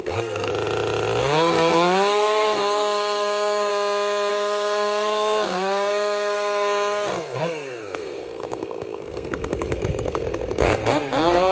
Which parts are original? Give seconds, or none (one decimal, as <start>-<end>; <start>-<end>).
0.5-1.2; 3.7-4.3